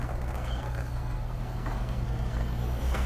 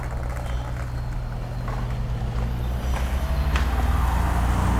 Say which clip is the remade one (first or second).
first